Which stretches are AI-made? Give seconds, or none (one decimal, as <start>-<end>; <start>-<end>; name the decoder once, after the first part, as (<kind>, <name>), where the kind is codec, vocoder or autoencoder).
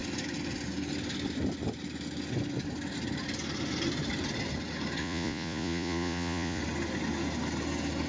5.0-6.6 (vocoder, Vocos)